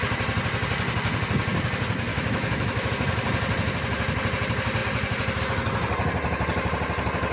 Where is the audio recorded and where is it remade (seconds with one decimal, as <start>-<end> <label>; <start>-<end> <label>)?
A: 0.0-2.1 recorded; 2.1-2.9 remade; 2.9-7.3 recorded